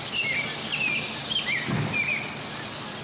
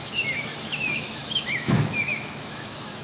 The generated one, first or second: second